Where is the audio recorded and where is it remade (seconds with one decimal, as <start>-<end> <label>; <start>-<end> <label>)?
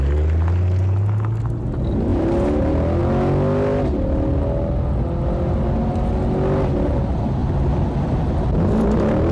0.0-7.4 recorded; 7.4-8.4 remade; 8.4-9.3 recorded